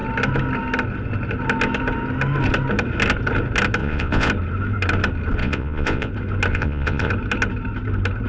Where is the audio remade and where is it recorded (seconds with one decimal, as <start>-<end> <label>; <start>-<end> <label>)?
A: 0.0-3.8 recorded; 3.8-4.3 remade; 4.3-5.4 recorded; 5.4-6.1 remade; 6.1-6.5 recorded; 6.5-7.1 remade; 7.1-8.3 recorded